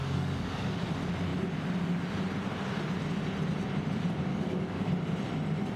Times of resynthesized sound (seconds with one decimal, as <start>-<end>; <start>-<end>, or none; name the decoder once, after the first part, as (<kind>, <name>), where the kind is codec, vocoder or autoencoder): 0.0-0.9 (codec, DAC); 4.3-4.9